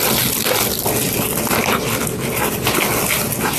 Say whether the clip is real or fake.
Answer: real